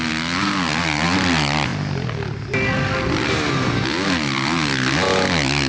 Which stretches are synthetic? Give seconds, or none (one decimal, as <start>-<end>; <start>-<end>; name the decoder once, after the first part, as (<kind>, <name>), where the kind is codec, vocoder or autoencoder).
none